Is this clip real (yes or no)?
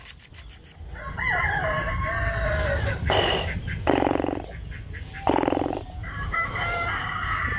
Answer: yes